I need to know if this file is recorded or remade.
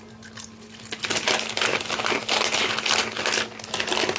recorded